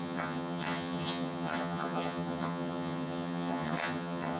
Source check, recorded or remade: remade